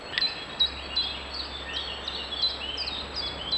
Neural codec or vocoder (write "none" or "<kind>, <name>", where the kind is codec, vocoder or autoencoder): none